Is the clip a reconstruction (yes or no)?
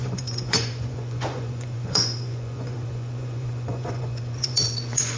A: yes